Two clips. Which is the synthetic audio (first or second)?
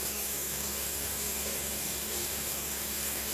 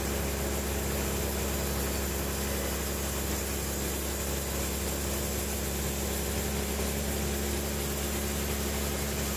first